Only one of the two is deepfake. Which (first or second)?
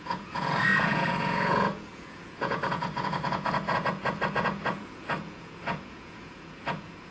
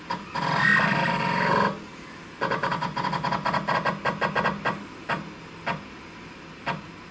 first